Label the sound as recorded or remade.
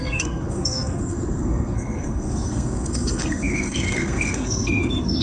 remade